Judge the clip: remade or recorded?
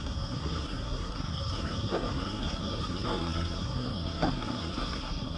remade